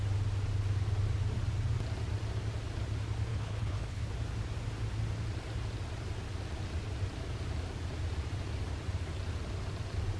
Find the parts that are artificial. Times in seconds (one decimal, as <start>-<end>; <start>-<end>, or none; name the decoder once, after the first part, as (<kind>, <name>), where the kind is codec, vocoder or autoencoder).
3.3-4.1 (codec, HILCodec)